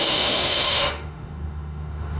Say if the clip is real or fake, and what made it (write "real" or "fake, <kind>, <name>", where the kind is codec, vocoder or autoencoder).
fake, autoencoder, DAC-VAE